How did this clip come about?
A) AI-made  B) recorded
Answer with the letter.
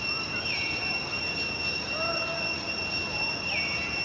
B